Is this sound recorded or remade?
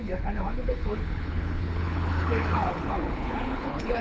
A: remade